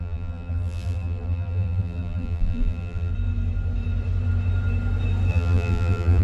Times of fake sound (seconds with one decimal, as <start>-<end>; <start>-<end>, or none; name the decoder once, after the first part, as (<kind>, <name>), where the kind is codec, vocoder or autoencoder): 0.0-3.1 (vocoder, BigVGAN v2); 5.3-6.2